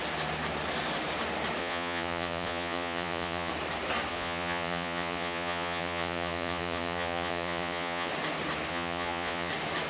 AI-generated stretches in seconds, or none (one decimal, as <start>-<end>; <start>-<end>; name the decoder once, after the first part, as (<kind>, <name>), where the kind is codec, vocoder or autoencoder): 1.6-3.5 (vocoder, Vocos); 4.1-8.1; 8.7-9.5